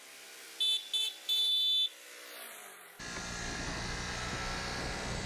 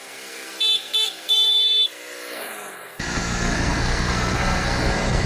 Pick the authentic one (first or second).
first